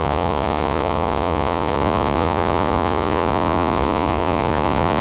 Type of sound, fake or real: fake